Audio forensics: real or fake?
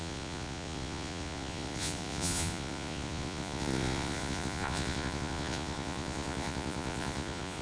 fake